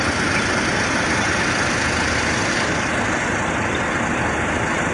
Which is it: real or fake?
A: real